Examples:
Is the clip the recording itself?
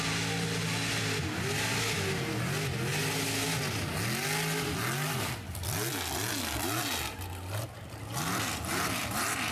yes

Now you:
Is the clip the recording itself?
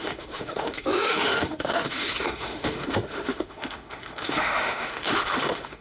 no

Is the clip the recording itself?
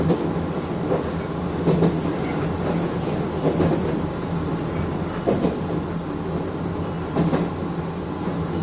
yes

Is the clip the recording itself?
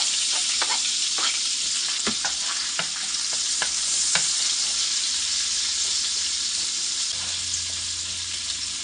yes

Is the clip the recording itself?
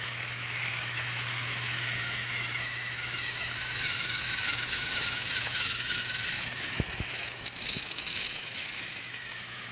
no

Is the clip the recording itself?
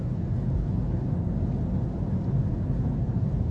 yes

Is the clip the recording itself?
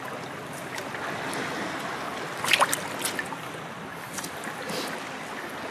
yes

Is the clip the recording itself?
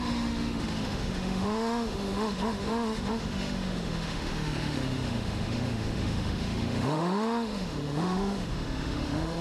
no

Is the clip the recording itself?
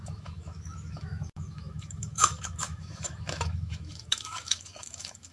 no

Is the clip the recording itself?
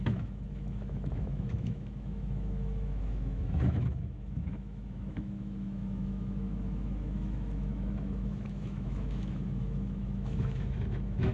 no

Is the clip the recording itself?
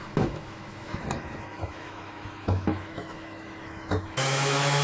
no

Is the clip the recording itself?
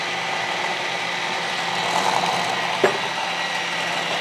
yes